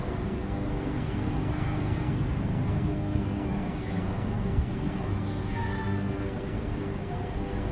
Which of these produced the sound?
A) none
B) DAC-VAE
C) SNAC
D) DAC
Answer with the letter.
C